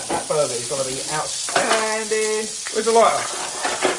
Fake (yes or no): no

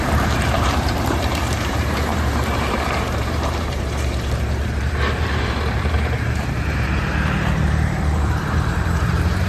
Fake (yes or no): yes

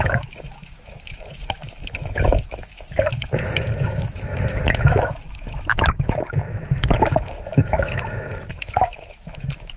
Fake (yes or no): yes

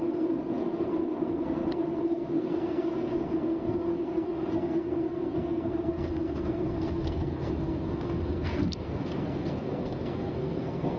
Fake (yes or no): yes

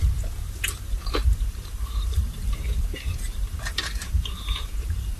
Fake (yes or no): yes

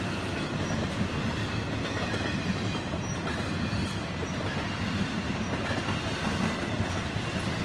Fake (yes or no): no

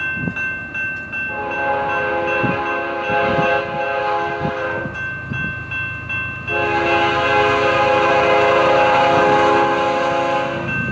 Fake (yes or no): no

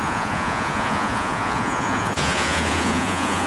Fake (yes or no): yes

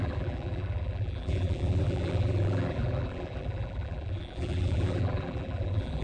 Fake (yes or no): yes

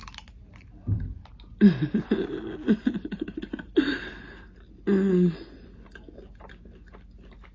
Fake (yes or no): no